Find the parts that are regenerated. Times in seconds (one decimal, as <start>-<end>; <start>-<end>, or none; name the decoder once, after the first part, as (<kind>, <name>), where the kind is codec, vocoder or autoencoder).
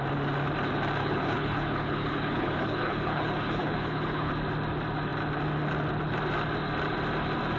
1.0-4.3 (codec, HILCodec)